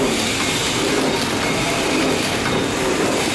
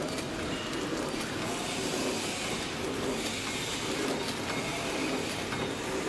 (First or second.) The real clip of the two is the second